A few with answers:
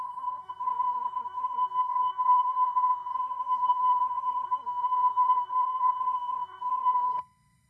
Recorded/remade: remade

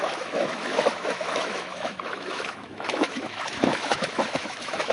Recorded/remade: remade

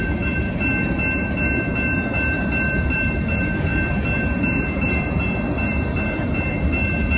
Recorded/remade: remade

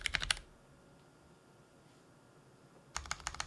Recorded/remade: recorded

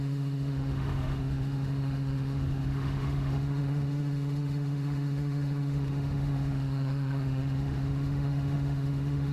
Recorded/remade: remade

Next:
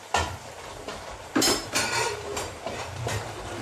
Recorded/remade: remade